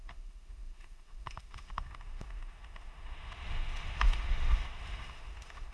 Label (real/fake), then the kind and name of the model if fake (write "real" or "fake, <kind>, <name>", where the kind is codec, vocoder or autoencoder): fake, autoencoder, DAC-VAE